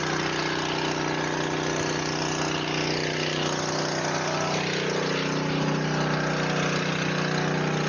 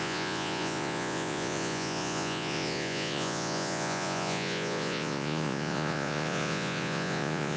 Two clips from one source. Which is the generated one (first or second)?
second